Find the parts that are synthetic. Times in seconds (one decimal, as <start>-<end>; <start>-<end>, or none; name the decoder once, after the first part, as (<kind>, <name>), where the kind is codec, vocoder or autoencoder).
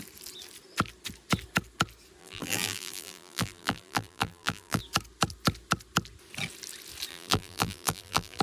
2.2-4.8 (vocoder, BigVGAN v2); 7.1-8.4